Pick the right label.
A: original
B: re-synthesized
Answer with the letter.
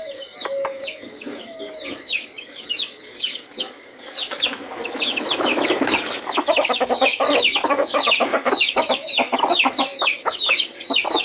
B